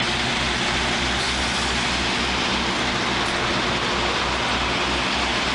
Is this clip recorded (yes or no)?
yes